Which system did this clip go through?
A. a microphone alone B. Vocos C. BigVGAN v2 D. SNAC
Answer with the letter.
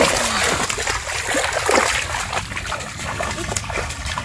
A